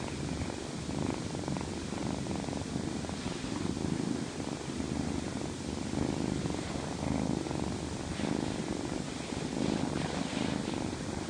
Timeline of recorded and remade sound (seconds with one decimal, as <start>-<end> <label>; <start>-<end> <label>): 0.0-2.0 recorded; 2.0-5.1 remade; 5.1-11.3 recorded